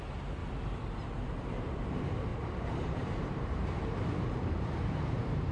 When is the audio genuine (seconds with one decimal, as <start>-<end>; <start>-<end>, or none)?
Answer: 0.4-1.0